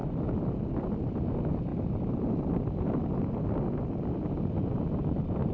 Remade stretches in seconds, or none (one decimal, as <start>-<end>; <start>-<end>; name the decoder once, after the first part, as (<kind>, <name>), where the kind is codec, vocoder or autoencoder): none

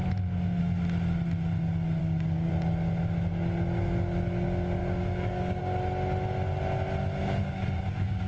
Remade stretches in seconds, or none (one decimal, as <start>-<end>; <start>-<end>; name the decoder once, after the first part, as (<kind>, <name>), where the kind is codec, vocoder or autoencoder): 2.0-2.5 (codec, DAC); 4.8-5.6; 7.4-8.3